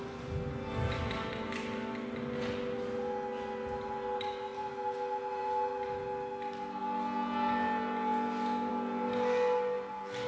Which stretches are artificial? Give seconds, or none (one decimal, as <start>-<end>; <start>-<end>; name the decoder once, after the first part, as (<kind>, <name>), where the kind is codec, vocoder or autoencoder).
none

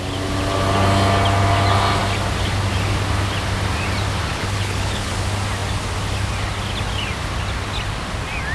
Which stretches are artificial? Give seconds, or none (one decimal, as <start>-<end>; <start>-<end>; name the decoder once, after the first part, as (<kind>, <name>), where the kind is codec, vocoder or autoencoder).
4.3-5.1 (codec, HILCodec)

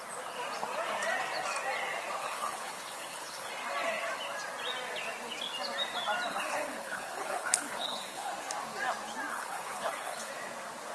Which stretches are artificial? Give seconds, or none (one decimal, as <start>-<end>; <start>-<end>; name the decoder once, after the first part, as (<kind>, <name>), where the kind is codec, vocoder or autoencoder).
2.2-3.5 (codec, HILCodec); 6.3-8.3; 9.3-10.3